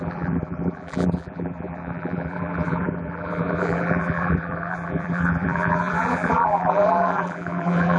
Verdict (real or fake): fake